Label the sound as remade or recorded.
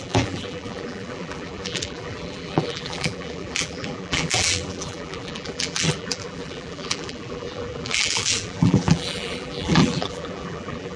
remade